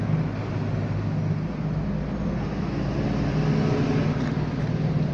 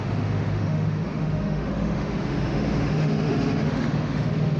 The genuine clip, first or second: first